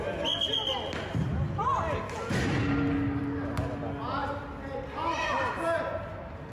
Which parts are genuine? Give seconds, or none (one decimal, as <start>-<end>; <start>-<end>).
0.0-6.5